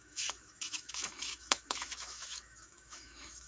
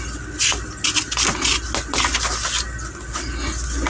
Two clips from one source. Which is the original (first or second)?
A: second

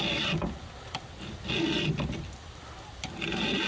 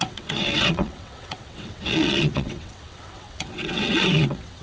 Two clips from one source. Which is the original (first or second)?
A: first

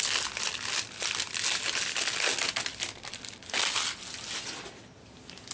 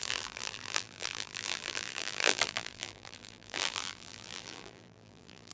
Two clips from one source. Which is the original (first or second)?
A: first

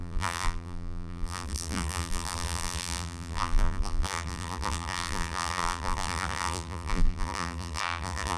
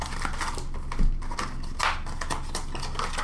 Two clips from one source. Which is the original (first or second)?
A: second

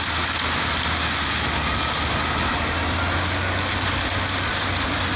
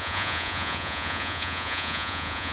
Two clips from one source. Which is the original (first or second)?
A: first